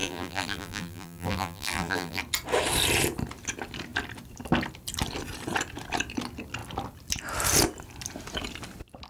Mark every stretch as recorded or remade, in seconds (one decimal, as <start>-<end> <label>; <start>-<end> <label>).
0.0-2.2 remade; 2.2-9.1 recorded